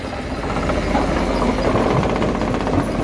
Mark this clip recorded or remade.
recorded